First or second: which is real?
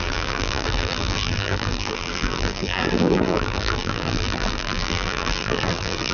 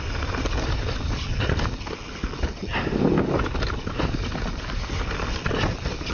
second